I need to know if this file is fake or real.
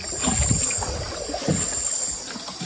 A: real